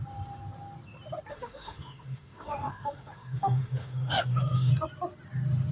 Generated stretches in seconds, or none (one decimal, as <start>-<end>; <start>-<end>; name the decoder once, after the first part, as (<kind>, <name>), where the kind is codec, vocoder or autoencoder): 1.3-4.7 (autoencoder, DAC-VAE)